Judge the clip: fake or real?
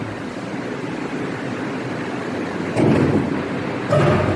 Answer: real